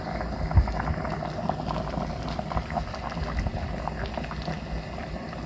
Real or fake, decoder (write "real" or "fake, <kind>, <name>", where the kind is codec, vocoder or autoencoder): real